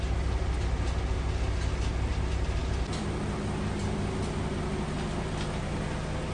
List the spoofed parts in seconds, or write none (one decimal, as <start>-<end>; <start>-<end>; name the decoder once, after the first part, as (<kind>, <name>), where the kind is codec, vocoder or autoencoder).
none